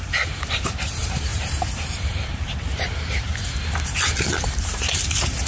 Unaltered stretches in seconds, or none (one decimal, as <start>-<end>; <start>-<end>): none